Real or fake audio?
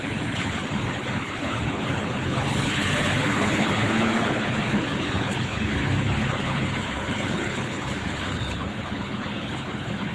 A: fake